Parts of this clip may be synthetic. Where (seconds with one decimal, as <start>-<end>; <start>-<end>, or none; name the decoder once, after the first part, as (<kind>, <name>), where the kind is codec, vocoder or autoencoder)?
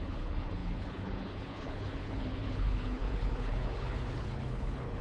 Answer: 0.0-5.0 (codec, HILCodec)